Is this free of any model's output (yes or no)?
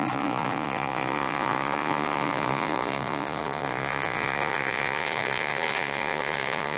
no